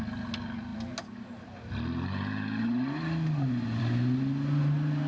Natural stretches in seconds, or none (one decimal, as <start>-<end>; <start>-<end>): 0.0-5.1